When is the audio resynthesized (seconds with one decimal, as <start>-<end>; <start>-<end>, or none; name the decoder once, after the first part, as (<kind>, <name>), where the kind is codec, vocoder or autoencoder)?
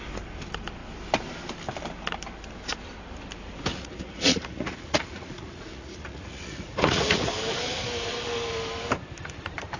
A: 3.7-7.3 (vocoder, Vocos)